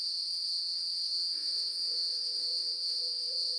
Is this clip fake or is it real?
fake